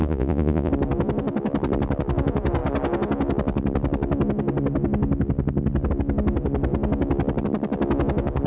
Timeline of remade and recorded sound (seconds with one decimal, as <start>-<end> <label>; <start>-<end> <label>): 0.0-0.7 remade; 0.7-8.5 recorded